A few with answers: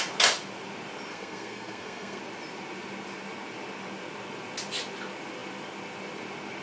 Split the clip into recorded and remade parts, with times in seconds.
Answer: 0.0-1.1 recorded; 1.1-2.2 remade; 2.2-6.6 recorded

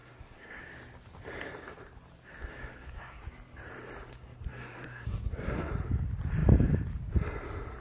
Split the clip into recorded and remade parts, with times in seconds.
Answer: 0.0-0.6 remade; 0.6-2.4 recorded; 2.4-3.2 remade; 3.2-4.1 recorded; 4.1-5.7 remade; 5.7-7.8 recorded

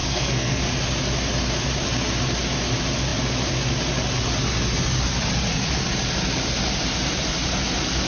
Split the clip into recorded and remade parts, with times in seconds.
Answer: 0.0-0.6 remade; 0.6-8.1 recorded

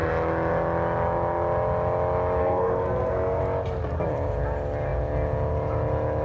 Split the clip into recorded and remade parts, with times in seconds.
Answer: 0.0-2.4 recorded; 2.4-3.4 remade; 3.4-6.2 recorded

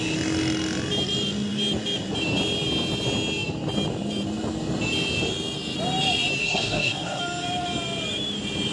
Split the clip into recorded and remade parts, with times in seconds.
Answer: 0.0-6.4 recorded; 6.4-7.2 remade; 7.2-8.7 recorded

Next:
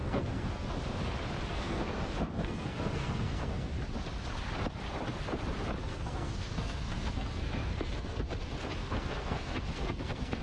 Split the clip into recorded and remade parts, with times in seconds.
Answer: 0.0-0.7 remade; 0.7-1.5 recorded; 1.5-3.7 remade; 3.7-5.8 recorded; 5.8-8.3 remade; 8.3-8.8 recorded; 8.8-10.4 remade